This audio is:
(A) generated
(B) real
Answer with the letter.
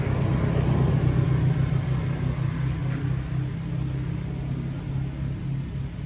B